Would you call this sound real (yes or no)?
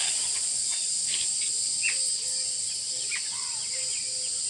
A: yes